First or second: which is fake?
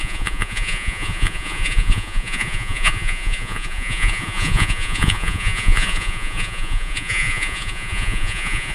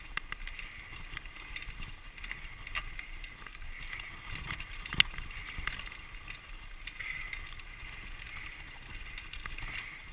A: first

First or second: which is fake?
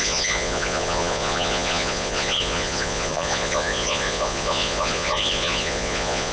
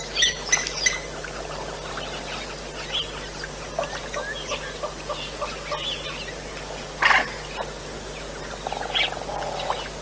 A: first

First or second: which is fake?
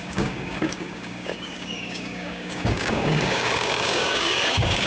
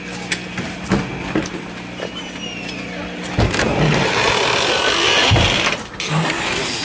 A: first